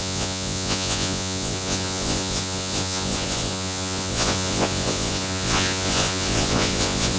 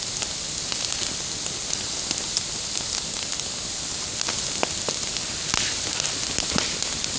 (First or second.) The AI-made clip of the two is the first